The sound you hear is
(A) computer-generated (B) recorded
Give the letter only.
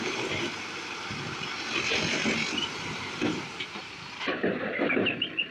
A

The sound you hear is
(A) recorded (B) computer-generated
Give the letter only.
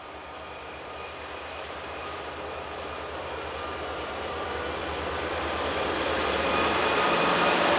B